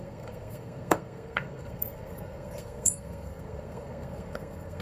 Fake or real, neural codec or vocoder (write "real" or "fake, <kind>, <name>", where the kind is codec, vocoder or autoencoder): fake, codec, SNAC